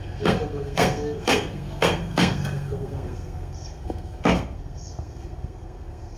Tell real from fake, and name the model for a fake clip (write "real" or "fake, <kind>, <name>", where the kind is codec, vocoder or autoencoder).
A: fake, codec, SNAC